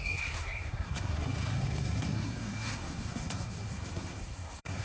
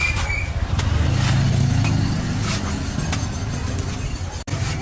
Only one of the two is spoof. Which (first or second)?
first